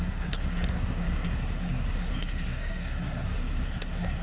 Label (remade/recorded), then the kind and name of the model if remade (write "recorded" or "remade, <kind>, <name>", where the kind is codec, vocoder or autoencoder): remade, codec, SNAC